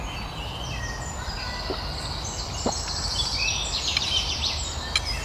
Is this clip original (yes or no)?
yes